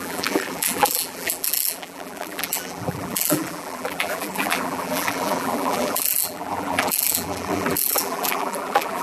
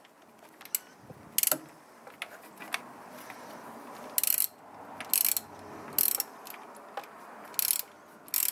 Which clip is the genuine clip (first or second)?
second